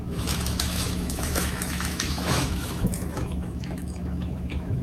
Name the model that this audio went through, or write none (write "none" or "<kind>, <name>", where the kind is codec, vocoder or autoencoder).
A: autoencoder, DAC-VAE